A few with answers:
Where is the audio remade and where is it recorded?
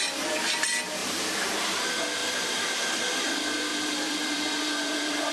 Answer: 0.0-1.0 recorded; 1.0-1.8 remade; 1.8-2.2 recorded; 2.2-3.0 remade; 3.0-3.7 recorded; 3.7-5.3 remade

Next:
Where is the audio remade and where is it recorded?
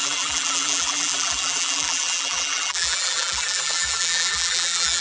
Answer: 0.0-5.0 remade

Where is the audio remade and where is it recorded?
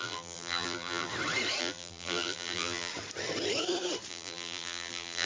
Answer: 0.0-1.1 remade; 1.1-1.6 recorded; 1.6-2.9 remade; 2.9-4.1 recorded; 4.1-5.3 remade